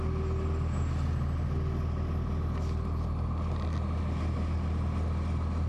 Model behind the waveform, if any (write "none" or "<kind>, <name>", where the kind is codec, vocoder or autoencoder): none